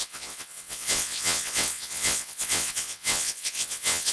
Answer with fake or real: fake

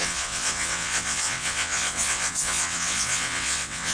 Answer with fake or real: fake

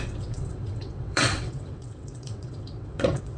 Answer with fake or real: fake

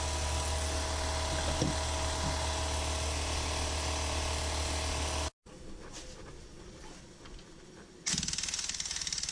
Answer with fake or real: real